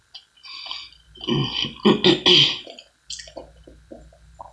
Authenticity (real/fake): real